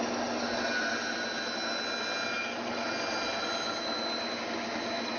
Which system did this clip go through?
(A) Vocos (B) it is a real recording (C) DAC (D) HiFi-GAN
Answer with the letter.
B